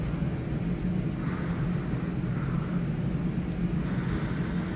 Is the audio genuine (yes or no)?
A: yes